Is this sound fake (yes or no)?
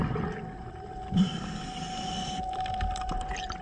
no